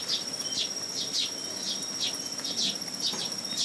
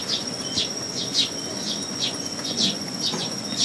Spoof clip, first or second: second